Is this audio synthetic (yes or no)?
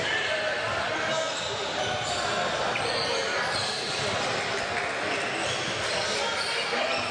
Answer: no